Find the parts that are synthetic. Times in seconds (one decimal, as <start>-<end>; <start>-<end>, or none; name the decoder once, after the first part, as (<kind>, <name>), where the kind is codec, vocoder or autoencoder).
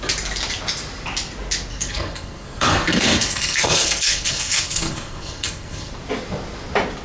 1.7-5.9 (codec, SNAC)